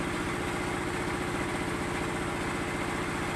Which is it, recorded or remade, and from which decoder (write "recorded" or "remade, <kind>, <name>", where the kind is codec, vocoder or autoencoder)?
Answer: recorded